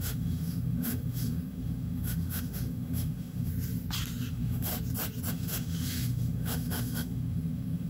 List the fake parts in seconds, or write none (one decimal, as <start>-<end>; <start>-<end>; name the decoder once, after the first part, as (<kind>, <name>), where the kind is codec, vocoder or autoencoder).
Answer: 0.0-3.5 (autoencoder, DAC-VAE); 4.3-4.7; 5.3-7.9